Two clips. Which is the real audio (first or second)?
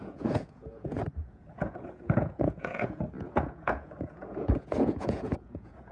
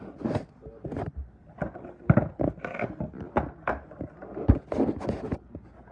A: second